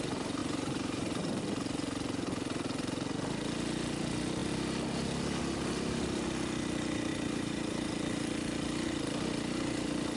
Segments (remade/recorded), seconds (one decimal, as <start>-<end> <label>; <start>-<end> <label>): 0.0-0.4 recorded; 0.4-1.4 remade; 1.4-7.1 recorded; 7.1-7.9 remade; 7.9-10.2 recorded